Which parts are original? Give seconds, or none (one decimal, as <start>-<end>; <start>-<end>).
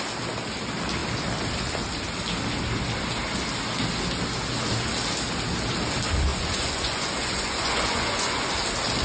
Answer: 0.0-6.3; 8.5-9.0